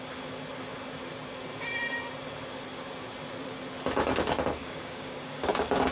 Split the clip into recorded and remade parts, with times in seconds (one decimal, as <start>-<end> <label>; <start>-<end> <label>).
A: 0.0-4.6 recorded; 4.6-5.9 remade